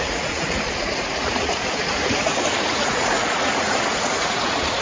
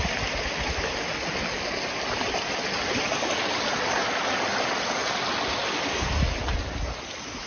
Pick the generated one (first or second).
first